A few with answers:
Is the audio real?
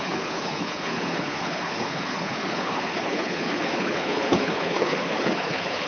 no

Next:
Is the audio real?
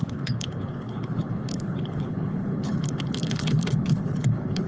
no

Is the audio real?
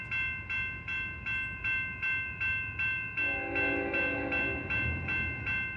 yes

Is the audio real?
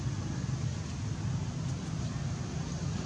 yes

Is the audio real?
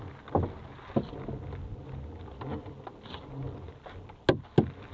yes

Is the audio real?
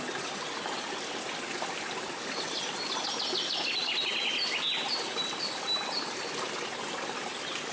yes